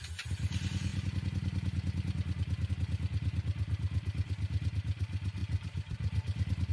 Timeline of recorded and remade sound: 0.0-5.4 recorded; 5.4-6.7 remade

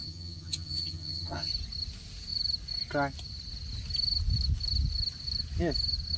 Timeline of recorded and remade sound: 0.0-1.5 remade; 1.5-6.2 recorded

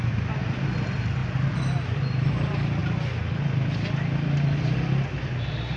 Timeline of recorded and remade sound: 0.0-5.8 recorded

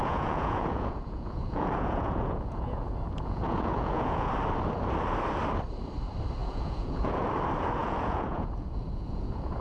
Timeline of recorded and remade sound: 0.0-4.3 remade; 4.3-6.4 recorded; 6.4-7.3 remade; 7.3-7.8 recorded; 7.8-9.6 remade

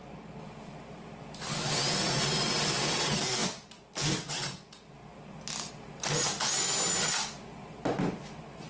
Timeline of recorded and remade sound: 0.0-8.7 recorded

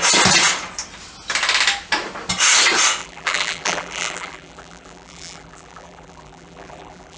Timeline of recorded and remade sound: 0.0-3.0 recorded; 3.0-7.2 remade